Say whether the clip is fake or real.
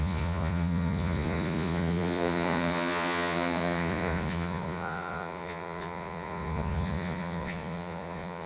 fake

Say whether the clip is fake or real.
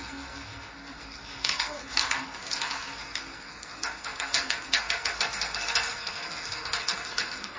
fake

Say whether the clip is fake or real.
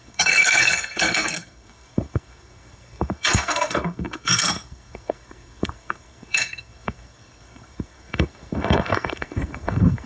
fake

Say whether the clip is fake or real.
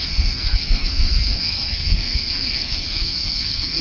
fake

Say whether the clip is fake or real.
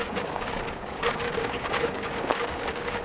fake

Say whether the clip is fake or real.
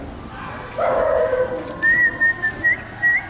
real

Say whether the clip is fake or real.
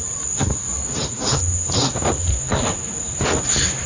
real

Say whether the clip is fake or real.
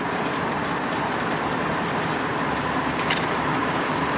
real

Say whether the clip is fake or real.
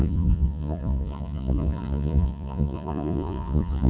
fake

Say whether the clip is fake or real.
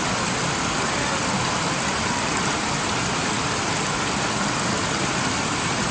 real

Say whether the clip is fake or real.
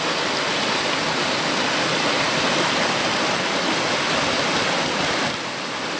real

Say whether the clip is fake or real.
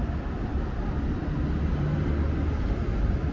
real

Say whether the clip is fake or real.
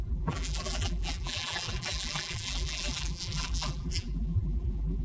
fake